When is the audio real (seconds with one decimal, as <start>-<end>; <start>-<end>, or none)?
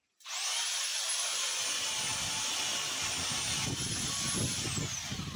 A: 0.0-5.4